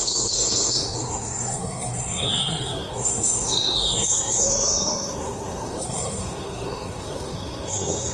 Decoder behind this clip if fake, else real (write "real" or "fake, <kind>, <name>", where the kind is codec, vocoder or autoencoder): fake, codec, SNAC